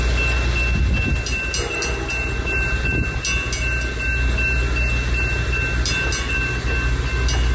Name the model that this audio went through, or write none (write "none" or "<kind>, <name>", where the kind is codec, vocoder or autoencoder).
none